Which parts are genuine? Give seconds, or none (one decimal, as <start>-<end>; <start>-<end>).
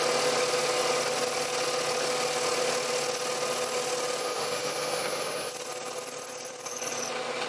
0.0-4.2; 5.5-7.5